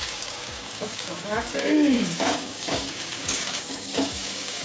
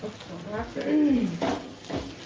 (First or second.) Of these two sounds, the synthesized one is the first